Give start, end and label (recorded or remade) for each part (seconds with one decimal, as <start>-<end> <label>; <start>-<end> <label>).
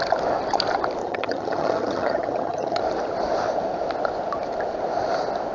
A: 0.0-1.0 recorded; 1.0-2.8 remade; 2.8-5.5 recorded